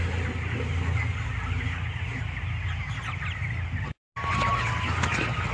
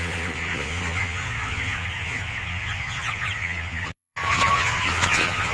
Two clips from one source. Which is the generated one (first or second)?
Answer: second